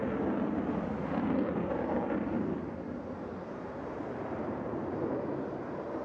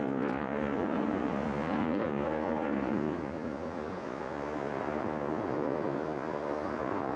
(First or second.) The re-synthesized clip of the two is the second